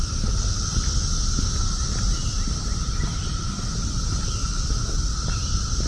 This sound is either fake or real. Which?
real